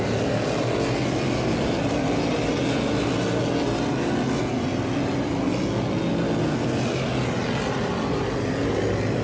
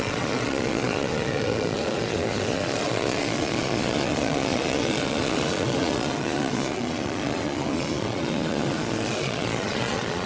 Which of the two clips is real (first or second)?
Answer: first